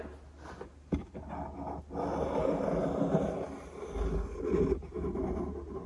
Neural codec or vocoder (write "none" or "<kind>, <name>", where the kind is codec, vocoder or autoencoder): none